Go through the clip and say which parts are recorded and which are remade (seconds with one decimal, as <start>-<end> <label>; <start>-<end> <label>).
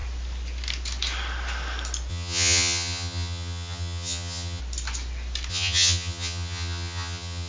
0.0-2.1 recorded; 2.1-4.6 remade; 4.6-5.5 recorded; 5.5-7.5 remade